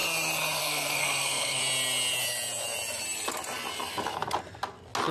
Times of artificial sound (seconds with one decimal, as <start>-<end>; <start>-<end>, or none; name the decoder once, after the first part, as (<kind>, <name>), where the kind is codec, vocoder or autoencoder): 0.6-1.6 (codec, SNAC)